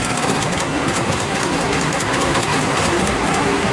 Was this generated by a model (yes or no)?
yes